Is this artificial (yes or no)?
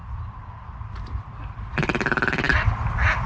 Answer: no